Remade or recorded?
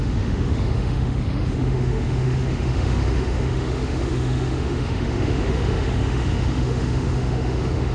remade